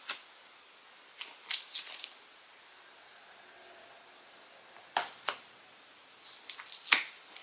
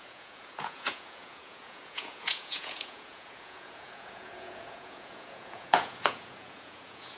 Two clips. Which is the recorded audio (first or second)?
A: first